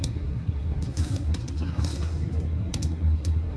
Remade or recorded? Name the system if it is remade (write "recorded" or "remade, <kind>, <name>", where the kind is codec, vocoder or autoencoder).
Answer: remade, codec, SNAC